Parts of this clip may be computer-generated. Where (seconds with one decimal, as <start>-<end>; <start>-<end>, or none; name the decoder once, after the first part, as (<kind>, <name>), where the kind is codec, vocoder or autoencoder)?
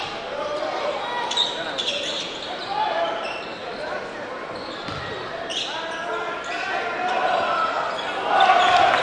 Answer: 7.2-7.9 (vocoder, BigVGAN v2)